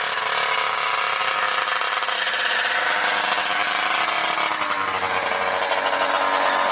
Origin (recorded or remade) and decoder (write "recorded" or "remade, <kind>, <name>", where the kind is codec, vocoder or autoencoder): recorded